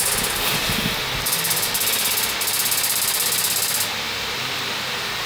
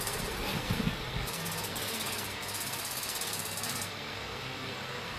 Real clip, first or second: first